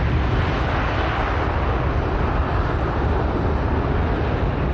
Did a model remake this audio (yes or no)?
no